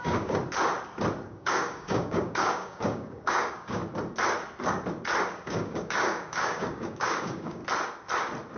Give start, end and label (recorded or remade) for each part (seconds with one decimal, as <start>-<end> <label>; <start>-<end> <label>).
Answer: 0.0-0.4 remade; 0.4-1.3 recorded; 1.3-3.8 remade; 3.8-5.3 recorded; 5.3-7.6 remade; 7.6-8.6 recorded